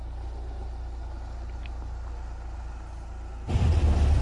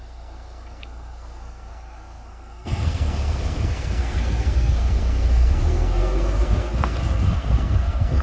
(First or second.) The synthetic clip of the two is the second